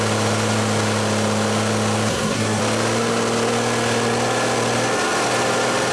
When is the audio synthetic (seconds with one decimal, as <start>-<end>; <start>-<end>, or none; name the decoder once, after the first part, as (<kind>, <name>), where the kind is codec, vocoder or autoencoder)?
2.1-2.6 (codec, SNAC)